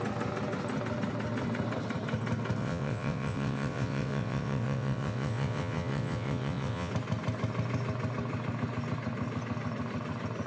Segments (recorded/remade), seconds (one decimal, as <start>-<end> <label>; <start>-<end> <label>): 0.0-2.6 recorded; 2.6-6.9 remade; 6.9-10.5 recorded